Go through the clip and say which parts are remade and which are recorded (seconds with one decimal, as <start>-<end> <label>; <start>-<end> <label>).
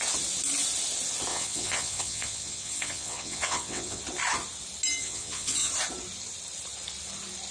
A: 0.0-1.3 recorded; 1.3-4.0 remade; 4.0-5.0 recorded; 5.0-5.7 remade; 5.7-7.5 recorded